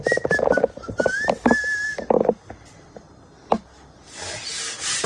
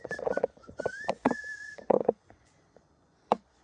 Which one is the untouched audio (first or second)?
first